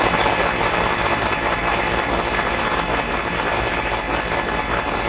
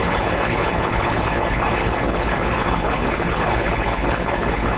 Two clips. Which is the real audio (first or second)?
first